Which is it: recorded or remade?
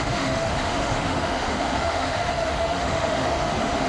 remade